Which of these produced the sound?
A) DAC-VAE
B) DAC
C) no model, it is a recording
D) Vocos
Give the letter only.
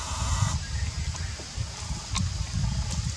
C